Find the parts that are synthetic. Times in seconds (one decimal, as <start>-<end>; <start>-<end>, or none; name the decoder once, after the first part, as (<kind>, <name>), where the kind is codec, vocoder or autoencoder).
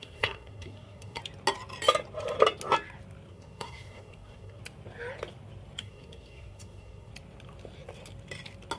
0.0-1.2 (codec, SNAC); 3.3-4.6; 5.8-7.1